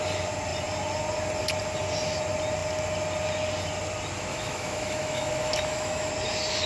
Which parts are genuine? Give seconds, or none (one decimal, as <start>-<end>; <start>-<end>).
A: 0.0-4.3; 6.1-6.7